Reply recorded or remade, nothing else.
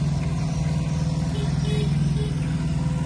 recorded